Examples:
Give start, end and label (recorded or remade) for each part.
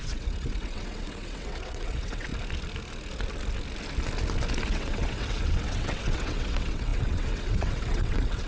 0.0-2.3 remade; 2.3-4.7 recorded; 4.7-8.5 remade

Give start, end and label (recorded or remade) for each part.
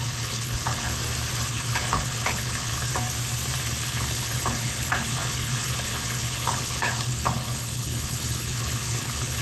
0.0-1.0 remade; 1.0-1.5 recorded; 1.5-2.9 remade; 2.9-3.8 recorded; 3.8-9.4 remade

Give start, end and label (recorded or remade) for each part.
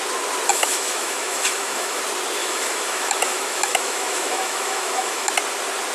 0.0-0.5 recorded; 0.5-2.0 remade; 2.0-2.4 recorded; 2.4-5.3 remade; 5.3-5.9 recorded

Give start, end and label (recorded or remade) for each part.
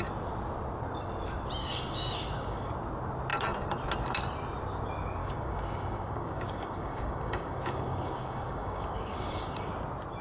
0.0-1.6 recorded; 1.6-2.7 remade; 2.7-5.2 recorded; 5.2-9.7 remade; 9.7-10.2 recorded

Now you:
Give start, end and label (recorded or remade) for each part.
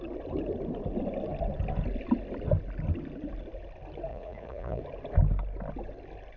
0.0-4.1 recorded; 4.1-4.8 remade; 4.8-6.4 recorded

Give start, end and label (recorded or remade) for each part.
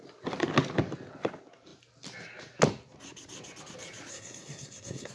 0.0-4.1 recorded; 4.1-5.1 remade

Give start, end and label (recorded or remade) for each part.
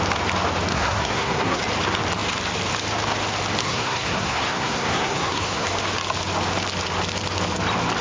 0.0-0.7 recorded; 0.7-1.6 remade; 1.6-3.6 recorded; 3.6-5.7 remade; 5.7-8.0 recorded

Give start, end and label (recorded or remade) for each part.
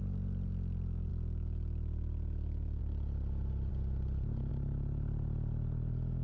0.0-6.2 recorded